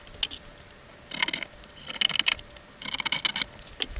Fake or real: real